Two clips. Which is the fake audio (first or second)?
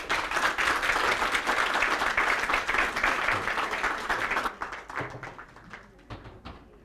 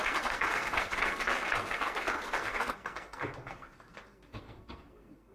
second